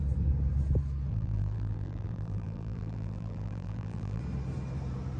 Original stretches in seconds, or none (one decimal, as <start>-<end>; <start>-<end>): 0.0-1.1; 4.2-5.2